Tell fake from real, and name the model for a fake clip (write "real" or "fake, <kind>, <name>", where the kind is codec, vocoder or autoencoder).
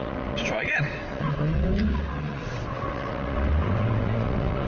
fake, vocoder, WaveNeXt